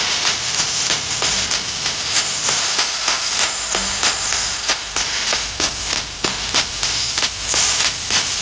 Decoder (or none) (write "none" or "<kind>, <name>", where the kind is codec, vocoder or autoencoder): none